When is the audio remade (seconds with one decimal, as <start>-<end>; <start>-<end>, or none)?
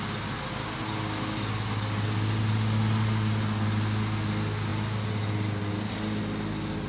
none